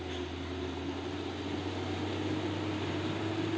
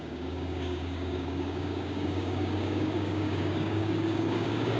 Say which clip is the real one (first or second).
first